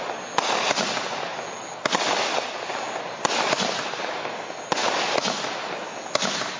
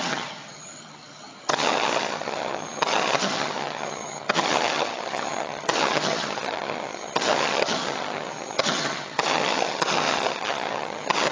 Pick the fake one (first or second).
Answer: second